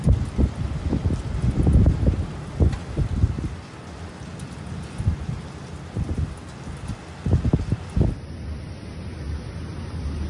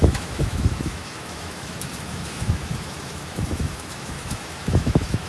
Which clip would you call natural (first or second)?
first